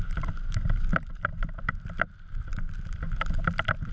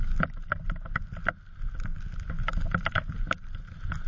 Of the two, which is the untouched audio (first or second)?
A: second